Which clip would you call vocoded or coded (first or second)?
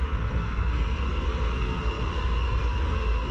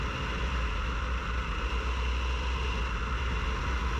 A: first